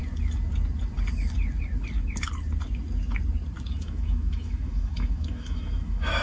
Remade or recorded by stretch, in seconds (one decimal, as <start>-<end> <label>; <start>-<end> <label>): 0.0-3.7 recorded; 3.7-6.2 remade